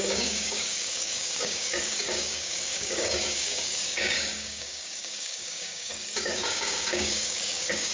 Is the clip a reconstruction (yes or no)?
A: yes